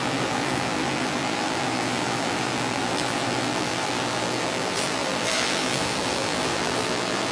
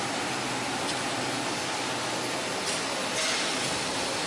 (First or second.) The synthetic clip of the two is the first